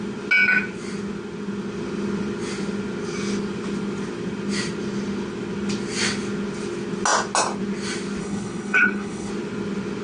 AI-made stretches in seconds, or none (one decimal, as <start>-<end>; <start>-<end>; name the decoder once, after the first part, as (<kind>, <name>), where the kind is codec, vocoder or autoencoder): 8.2-9.3 (codec, HILCodec)